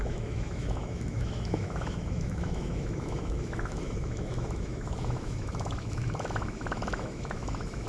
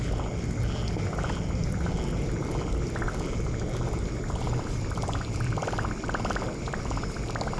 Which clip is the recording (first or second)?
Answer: second